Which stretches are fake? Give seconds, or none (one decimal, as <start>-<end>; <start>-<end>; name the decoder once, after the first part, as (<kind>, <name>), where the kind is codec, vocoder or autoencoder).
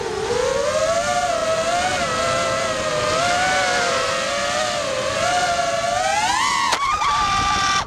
none